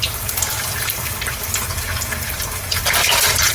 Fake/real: fake